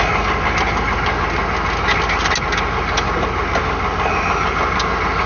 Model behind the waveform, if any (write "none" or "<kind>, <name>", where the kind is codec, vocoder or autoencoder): none